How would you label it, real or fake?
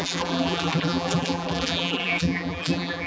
fake